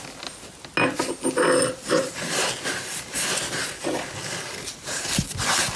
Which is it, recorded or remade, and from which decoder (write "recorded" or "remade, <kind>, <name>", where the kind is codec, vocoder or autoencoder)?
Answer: recorded